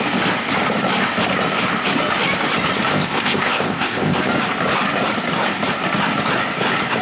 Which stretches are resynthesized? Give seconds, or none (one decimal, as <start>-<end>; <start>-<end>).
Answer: 2.9-4.2